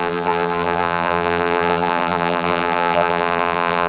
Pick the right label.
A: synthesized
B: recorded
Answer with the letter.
A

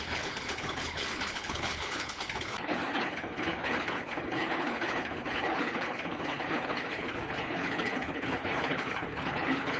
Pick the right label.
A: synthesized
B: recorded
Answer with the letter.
A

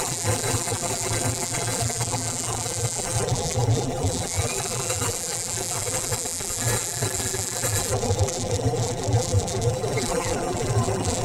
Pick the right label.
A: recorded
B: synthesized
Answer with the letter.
B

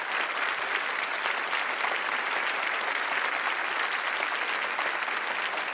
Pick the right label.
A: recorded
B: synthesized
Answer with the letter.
A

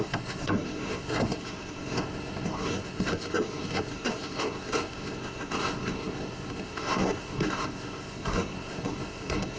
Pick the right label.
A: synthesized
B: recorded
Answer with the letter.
A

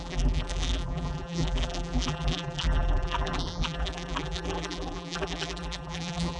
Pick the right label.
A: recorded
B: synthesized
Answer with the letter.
B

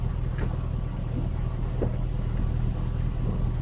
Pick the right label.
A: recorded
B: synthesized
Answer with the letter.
A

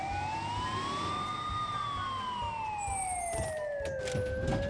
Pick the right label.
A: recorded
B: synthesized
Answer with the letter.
A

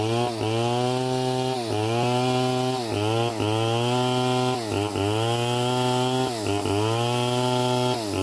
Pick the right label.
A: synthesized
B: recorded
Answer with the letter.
B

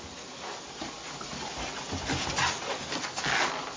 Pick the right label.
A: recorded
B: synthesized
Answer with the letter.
A